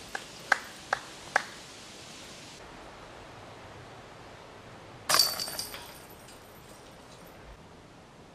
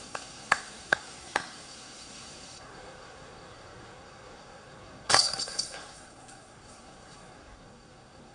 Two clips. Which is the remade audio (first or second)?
second